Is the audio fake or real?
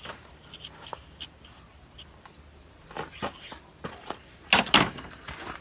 real